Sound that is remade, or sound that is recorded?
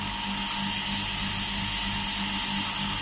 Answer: recorded